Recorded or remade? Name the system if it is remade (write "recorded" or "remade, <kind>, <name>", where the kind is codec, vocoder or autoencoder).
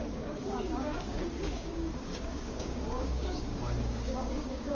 remade, codec, DAC